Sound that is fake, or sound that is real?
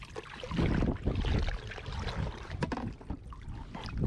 real